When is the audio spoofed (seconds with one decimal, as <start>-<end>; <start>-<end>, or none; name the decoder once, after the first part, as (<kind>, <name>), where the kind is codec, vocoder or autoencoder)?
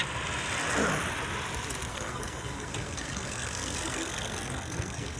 1.9-5.2 (codec, SNAC)